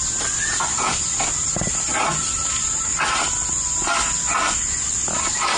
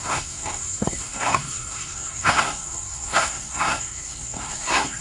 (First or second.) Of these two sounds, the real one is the first